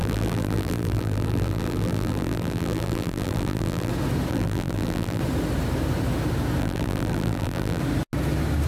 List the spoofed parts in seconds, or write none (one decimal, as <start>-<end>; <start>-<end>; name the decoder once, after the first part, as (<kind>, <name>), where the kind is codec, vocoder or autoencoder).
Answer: 0.0-3.9 (vocoder, BigVGAN v2); 4.3-5.2; 6.6-7.8